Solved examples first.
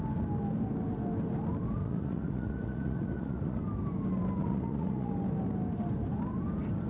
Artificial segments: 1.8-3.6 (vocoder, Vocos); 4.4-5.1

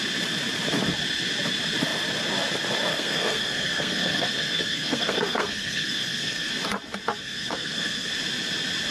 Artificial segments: 2.9-6.5 (codec, SNAC); 7.2-8.1